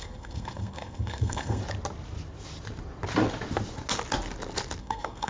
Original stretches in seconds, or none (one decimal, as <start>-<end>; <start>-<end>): 1.6-4.8